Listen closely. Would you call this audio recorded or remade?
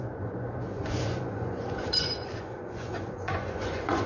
remade